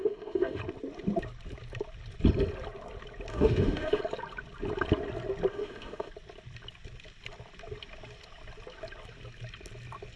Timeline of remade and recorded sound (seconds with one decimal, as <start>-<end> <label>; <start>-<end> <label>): 0.0-0.6 remade; 0.6-3.3 recorded; 3.3-4.0 remade; 4.0-5.5 recorded; 5.5-6.1 remade; 6.1-10.2 recorded